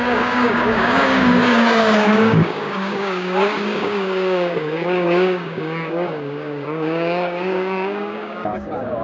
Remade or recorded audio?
remade